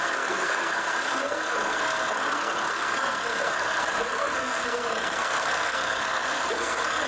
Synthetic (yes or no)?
yes